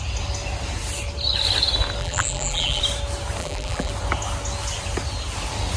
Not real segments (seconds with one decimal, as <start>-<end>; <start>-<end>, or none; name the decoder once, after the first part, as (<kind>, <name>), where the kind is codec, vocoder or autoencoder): 2.0-2.8 (vocoder, BigVGAN v2); 3.4-3.9